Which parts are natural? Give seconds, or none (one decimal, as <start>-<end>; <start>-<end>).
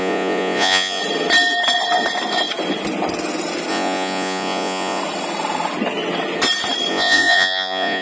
1.0-3.7; 5.0-6.9